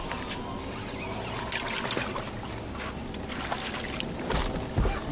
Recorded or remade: recorded